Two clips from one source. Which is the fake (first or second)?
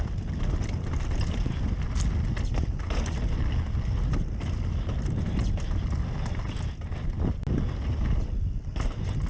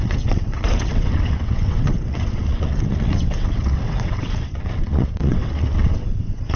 second